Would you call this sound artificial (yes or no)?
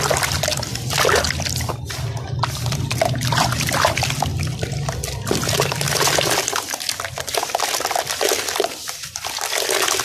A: no